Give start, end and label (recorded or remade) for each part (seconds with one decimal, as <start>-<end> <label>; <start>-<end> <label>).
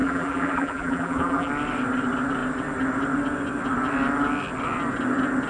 0.0-1.5 remade; 1.5-5.5 recorded